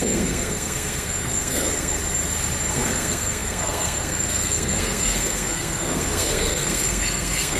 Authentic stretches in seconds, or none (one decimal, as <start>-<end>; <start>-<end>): 2.0-2.7